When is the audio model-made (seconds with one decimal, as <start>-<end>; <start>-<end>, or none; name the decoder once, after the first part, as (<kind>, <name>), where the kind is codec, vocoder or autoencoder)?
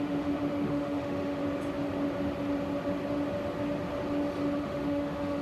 0.0-1.4 (autoencoder, DAC-VAE); 4.6-5.4